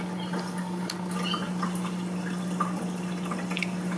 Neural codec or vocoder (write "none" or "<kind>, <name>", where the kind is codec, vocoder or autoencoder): none